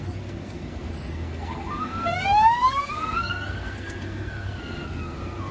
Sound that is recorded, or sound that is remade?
remade